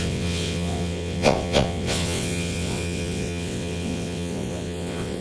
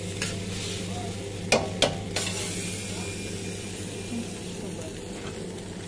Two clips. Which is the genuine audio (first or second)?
second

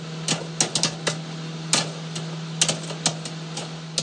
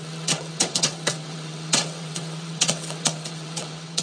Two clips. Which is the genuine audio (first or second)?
first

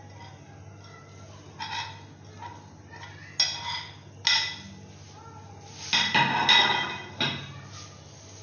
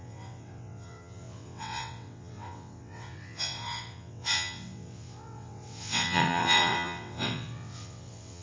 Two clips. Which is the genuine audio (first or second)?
first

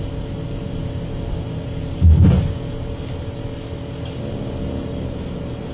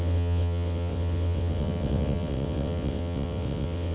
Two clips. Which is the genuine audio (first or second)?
first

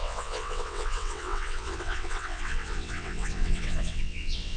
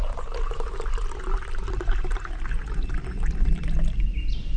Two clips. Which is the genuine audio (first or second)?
second